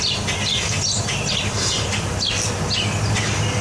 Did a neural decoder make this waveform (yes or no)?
no